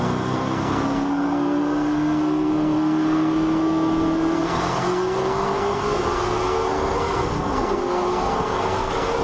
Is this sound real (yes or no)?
no